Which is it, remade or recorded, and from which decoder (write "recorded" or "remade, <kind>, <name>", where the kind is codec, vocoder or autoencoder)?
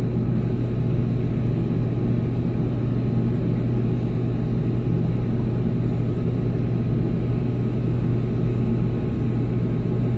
recorded